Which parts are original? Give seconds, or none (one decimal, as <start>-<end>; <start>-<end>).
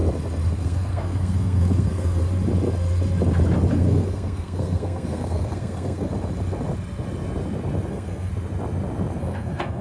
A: 0.0-0.5; 2.2-3.7; 6.1-7.9; 8.3-9.2